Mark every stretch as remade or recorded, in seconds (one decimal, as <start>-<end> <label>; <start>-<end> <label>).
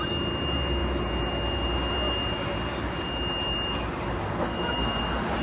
0.0-4.3 recorded; 4.3-5.0 remade; 5.0-5.4 recorded